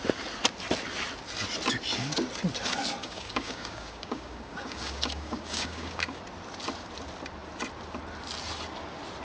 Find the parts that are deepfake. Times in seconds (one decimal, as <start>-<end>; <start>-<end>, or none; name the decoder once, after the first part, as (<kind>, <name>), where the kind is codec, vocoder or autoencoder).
3.0-6.2 (codec, DAC)